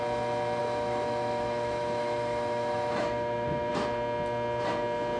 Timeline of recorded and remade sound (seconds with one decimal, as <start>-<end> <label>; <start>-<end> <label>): 0.0-0.6 recorded; 0.6-3.7 remade; 3.7-5.2 recorded